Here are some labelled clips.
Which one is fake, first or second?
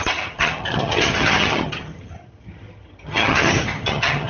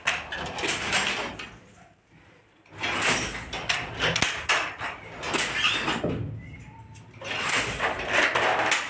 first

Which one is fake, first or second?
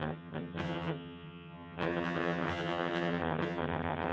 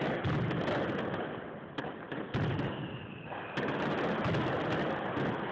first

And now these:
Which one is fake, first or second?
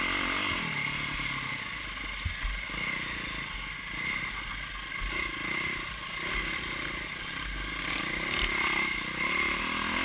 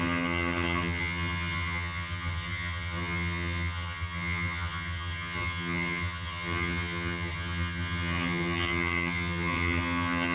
second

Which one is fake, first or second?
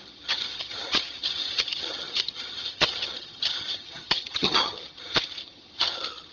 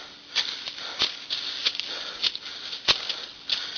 first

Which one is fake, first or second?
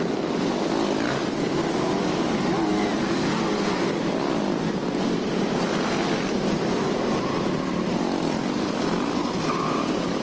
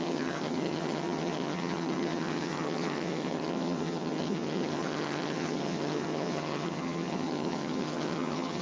second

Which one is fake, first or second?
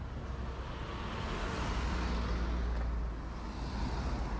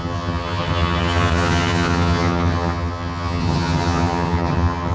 second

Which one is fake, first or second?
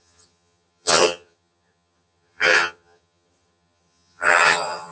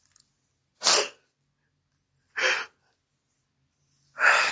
first